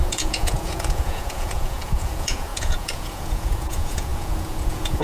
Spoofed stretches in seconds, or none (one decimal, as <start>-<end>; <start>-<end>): 0.0-5.0

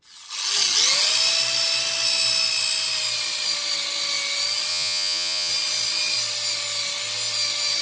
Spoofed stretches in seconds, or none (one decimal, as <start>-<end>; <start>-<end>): 4.7-5.5

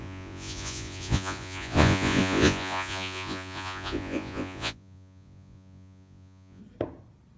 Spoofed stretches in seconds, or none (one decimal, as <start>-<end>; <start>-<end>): 0.0-6.6

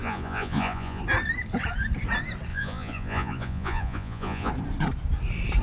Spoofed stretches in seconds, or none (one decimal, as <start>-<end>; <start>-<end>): 0.0-1.0; 2.5-4.5